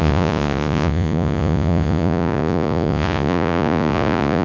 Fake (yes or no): yes